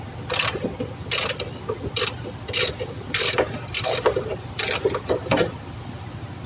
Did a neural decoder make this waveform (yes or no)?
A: no